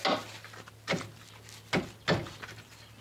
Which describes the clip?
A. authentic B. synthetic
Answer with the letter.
A